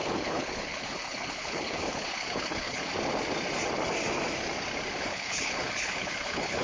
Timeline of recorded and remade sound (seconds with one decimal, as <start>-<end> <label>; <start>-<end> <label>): 0.0-2.9 remade; 2.9-5.0 recorded; 5.0-6.6 remade